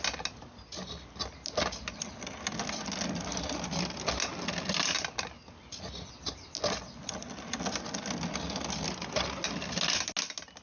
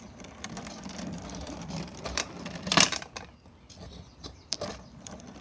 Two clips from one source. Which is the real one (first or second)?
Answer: first